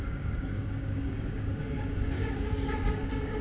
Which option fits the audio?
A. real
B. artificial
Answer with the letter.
B